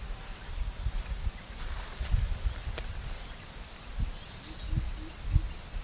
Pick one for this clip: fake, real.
real